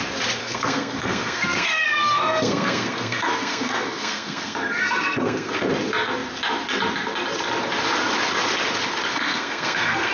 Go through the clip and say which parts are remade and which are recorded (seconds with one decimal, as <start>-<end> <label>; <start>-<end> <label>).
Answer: 0.0-0.4 recorded; 0.4-5.5 remade; 5.5-9.1 recorded; 9.1-10.1 remade